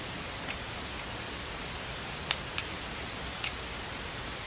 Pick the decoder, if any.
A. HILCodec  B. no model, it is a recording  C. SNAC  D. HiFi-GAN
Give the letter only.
B